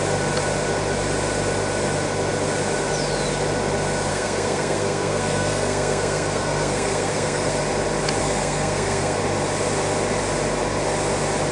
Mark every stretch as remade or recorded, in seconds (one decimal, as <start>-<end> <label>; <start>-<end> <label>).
0.0-4.1 recorded; 4.1-7.6 remade; 7.6-8.2 recorded; 8.2-9.2 remade; 9.2-11.5 recorded